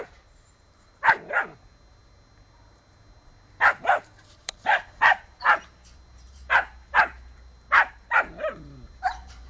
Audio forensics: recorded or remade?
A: remade